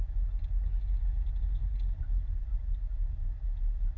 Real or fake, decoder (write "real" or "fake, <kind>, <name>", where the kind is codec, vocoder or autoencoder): real